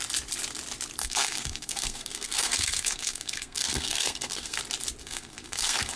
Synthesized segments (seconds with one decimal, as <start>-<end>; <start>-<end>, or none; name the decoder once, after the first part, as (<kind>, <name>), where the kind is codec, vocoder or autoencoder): 1.0-4.6 (codec, SNAC); 5.0-6.0